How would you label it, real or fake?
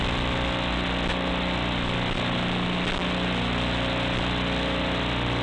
real